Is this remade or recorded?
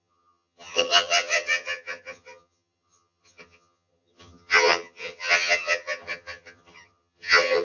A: remade